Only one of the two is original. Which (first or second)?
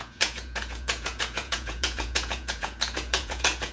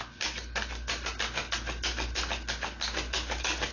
second